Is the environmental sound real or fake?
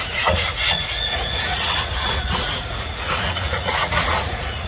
fake